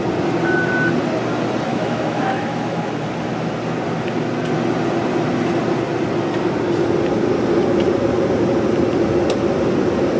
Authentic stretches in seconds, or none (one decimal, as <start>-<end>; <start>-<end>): 0.0-1.7; 2.8-10.2